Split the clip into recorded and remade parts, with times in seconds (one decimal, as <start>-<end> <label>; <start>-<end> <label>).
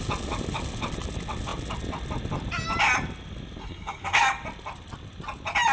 0.0-3.6 recorded; 3.6-4.2 remade; 4.2-5.7 recorded